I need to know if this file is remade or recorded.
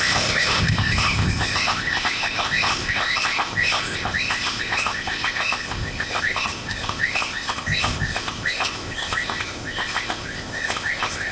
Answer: remade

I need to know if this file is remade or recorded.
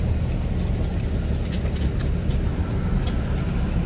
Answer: recorded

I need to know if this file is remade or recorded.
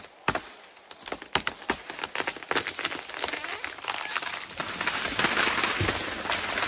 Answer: recorded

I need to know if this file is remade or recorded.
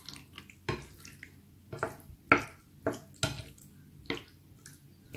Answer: recorded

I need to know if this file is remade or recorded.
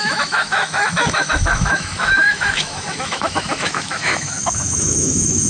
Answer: remade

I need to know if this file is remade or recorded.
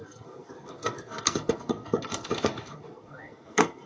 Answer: remade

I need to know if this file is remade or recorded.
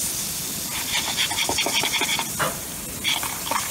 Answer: recorded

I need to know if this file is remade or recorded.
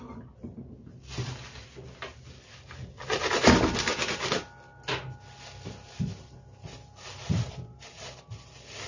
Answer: recorded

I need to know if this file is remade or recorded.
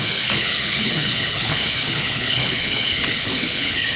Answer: remade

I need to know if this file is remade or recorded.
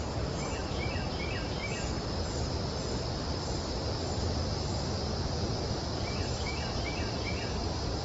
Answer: remade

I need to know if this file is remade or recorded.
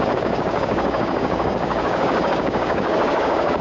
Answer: remade